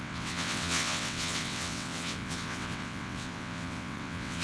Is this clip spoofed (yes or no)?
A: yes